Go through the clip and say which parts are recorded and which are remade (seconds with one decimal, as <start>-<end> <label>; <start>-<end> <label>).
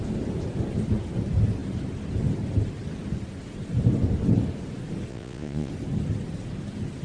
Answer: 0.0-5.1 recorded; 5.1-5.7 remade; 5.7-7.0 recorded